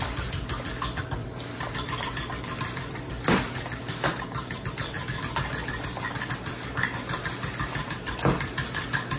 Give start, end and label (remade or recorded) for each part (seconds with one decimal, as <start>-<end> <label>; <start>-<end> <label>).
0.0-1.2 recorded; 1.2-4.2 remade; 4.2-5.8 recorded; 5.8-6.4 remade; 6.4-9.2 recorded